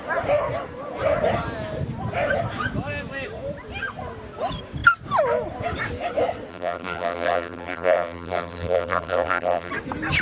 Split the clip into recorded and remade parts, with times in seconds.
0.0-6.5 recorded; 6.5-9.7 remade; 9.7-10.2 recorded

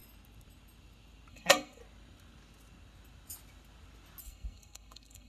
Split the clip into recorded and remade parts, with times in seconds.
0.0-1.3 recorded; 1.3-1.8 remade; 1.8-4.2 recorded; 4.2-5.3 remade

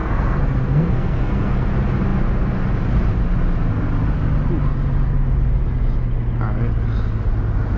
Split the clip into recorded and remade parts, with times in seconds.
0.0-1.7 remade; 1.7-7.8 recorded

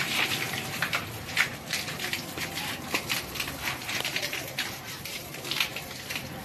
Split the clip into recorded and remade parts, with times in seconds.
0.0-1.5 remade; 1.5-3.8 recorded; 3.8-5.8 remade; 5.8-6.4 recorded

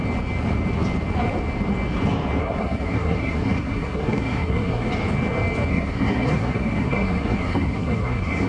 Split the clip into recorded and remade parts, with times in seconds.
0.0-2.4 recorded; 2.4-4.9 remade; 4.9-5.7 recorded; 5.7-8.5 remade

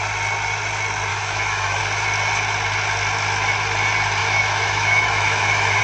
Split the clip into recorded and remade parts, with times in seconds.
0.0-1.1 recorded; 1.1-1.8 remade; 1.8-4.2 recorded; 4.2-5.8 remade